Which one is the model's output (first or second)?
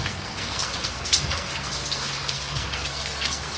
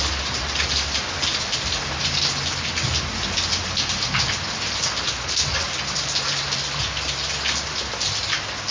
first